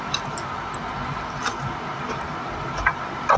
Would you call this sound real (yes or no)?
yes